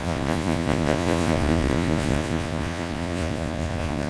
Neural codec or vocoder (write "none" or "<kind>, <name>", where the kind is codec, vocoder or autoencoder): vocoder, Vocos